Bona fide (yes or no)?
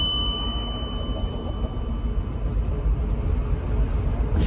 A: yes